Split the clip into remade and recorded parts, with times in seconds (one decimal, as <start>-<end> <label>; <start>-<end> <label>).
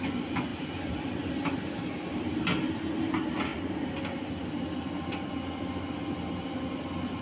0.0-7.2 recorded